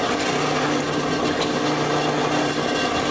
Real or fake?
real